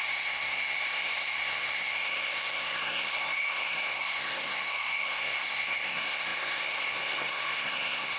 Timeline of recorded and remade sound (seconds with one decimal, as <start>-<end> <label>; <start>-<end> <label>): 0.0-8.2 remade